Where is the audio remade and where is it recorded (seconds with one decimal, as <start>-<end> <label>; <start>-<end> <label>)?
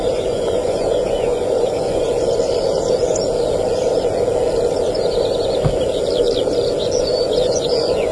0.0-2.1 remade; 2.1-7.0 recorded; 7.0-8.1 remade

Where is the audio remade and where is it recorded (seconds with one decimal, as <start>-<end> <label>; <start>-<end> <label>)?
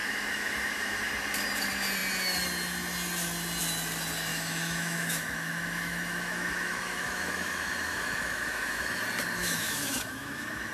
0.0-1.1 remade; 1.1-4.3 recorded; 4.3-9.0 remade; 9.0-9.4 recorded; 9.4-10.7 remade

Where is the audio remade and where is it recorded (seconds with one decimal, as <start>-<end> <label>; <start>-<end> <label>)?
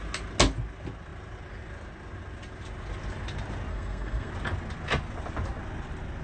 0.0-3.7 recorded; 3.7-4.3 remade; 4.3-6.2 recorded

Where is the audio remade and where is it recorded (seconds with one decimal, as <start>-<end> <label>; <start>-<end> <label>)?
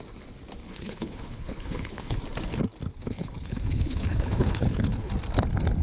0.0-0.6 recorded; 0.6-2.2 remade; 2.2-2.9 recorded; 2.9-5.1 remade; 5.1-5.8 recorded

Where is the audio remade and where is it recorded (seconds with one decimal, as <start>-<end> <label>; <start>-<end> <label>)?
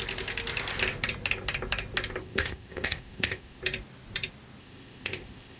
0.0-2.2 recorded; 2.2-3.6 remade; 3.6-4.6 recorded; 4.6-5.6 remade